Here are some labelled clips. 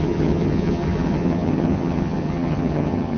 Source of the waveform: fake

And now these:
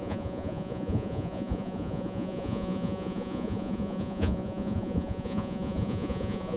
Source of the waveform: fake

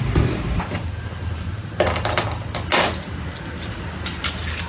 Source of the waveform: real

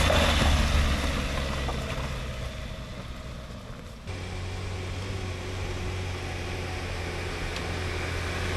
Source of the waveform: real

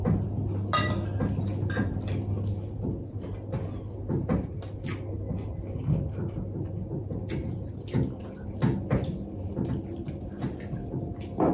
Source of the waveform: real